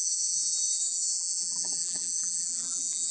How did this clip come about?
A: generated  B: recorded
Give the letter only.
A